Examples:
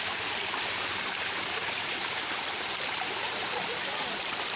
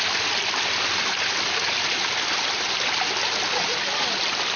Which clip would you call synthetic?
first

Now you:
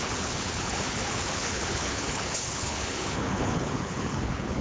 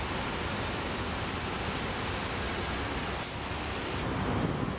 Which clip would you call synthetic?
first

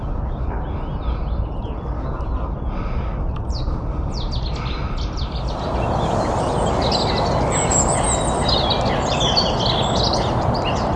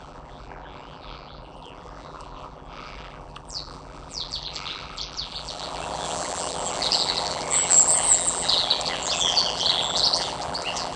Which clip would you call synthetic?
second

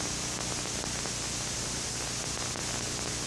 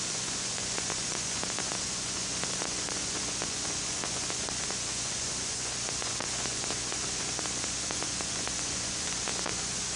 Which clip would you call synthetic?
second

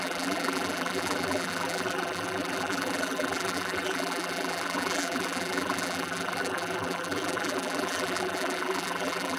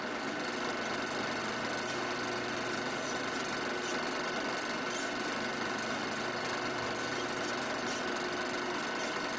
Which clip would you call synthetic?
first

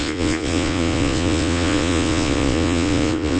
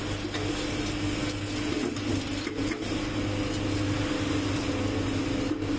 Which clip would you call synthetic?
first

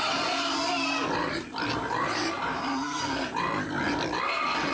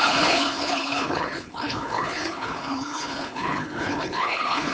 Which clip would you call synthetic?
second